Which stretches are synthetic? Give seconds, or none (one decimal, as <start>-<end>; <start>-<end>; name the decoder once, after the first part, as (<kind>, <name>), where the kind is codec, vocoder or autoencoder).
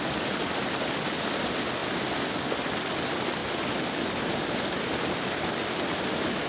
none